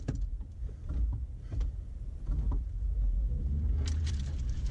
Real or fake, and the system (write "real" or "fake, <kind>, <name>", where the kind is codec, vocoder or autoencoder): fake, vocoder, BigVGAN v2